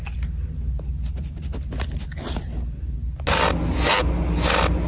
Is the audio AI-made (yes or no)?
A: no